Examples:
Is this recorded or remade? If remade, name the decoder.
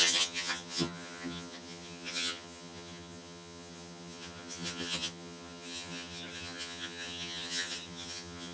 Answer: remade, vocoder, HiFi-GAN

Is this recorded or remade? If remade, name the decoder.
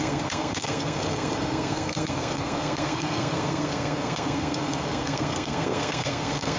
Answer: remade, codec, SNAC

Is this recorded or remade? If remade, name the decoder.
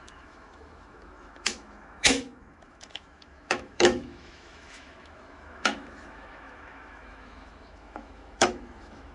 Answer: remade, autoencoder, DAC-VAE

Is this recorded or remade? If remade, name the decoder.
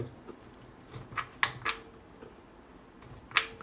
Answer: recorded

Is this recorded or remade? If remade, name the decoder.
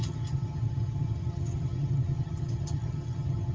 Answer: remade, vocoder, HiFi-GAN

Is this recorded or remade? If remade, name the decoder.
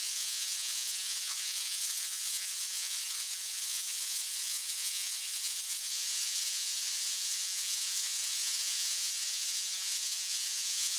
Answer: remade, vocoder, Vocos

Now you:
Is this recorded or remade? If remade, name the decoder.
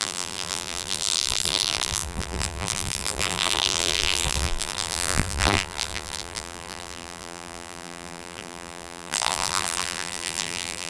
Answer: remade, vocoder, BigVGAN v2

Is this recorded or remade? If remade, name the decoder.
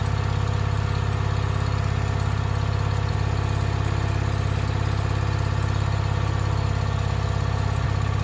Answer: recorded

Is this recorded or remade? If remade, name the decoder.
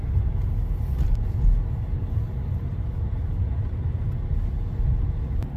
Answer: recorded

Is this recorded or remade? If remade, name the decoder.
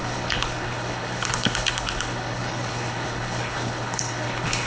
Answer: remade, codec, HILCodec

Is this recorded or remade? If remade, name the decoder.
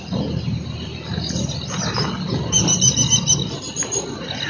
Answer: recorded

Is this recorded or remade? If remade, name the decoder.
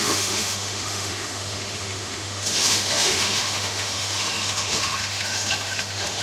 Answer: remade, autoencoder, DAC-VAE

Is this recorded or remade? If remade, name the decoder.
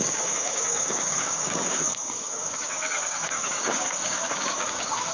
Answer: remade, codec, DAC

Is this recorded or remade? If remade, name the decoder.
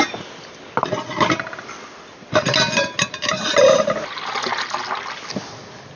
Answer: recorded